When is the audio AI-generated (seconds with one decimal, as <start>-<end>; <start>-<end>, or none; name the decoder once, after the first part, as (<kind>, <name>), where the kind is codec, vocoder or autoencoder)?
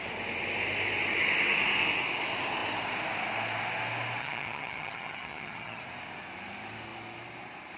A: 4.2-5.8 (vocoder, HiFi-GAN)